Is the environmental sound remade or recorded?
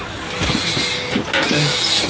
recorded